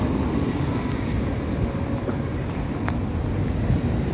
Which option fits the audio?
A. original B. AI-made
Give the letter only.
A